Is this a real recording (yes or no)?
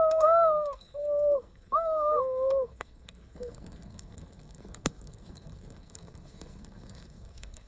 no